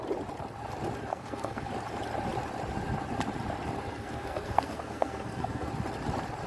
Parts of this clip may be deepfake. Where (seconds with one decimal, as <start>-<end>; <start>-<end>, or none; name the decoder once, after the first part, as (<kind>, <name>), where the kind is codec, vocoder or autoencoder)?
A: 1.1-1.7 (codec, SNAC); 3.9-5.7